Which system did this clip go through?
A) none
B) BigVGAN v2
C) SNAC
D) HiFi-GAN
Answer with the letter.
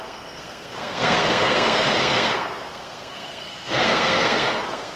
C